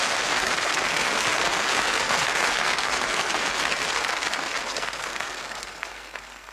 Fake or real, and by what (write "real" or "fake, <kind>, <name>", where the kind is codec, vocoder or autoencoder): fake, codec, SNAC